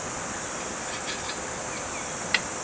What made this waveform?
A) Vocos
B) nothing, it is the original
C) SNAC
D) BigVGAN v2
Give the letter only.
B